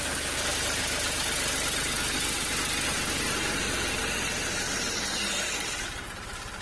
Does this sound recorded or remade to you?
recorded